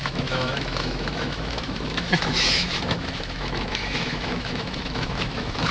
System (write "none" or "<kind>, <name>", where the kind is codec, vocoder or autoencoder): autoencoder, DAC-VAE